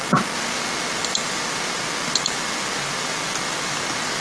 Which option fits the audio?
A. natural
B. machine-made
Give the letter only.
A